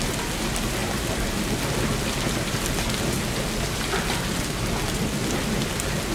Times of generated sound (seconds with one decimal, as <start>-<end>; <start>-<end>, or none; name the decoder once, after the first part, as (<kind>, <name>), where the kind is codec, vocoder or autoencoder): none

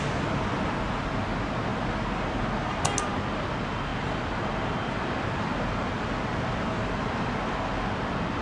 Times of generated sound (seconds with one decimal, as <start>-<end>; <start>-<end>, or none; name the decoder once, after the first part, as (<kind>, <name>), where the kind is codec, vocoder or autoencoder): none